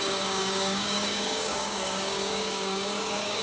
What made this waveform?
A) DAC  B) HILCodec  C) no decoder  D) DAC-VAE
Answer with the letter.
A